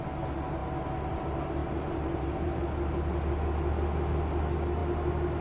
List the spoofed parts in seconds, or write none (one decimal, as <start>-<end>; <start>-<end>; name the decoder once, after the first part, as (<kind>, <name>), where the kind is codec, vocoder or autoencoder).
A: 1.6-2.6 (vocoder, BigVGAN v2)

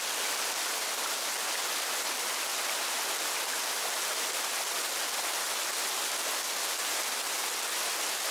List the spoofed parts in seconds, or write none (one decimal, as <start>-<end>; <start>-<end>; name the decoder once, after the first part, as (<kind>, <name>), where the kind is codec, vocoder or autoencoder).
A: none

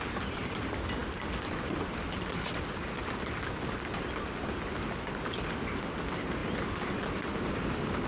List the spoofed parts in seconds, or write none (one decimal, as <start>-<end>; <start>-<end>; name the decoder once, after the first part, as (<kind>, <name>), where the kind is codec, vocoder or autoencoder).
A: 1.0-2.8 (vocoder, BigVGAN v2)

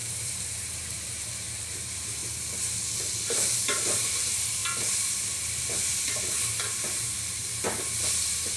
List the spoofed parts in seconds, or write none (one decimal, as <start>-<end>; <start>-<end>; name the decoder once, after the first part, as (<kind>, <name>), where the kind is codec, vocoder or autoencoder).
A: 0.0-2.2 (vocoder, BigVGAN v2); 3.3-4.6; 6.7-7.5; 8.2-8.6

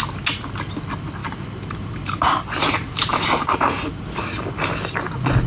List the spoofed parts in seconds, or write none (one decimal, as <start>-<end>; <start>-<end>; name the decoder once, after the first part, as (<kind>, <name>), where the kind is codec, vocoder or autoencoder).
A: 1.2-4.5 (vocoder, BigVGAN v2)

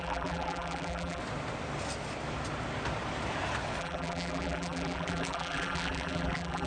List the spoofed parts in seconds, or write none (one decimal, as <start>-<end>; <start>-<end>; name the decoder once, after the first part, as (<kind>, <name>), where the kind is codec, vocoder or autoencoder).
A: 0.0-1.2 (vocoder, BigVGAN v2); 3.8-6.7